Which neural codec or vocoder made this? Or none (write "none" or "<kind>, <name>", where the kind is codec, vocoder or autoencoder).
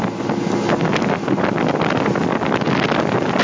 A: none